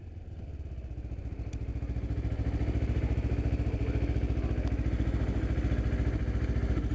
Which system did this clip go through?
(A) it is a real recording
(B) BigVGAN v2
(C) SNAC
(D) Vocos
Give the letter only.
A